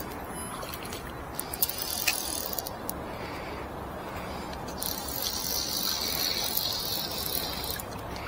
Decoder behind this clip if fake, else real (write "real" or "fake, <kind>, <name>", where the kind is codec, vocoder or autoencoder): real